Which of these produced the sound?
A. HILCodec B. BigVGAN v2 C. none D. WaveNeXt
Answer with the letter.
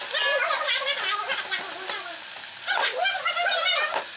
C